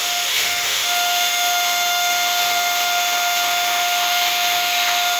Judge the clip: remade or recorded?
remade